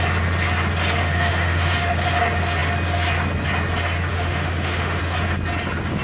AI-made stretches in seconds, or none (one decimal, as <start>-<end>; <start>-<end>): 1.0-1.9; 4.1-5.0